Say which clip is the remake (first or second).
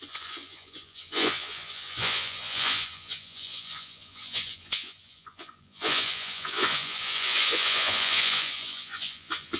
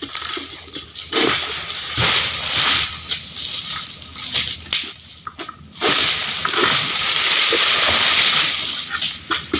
first